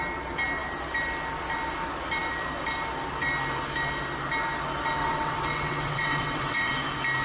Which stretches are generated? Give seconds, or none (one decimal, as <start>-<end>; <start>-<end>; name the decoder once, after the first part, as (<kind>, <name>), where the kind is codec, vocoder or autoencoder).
5.0-6.7 (vocoder, WaveNeXt)